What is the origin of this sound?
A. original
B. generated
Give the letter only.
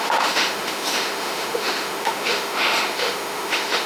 B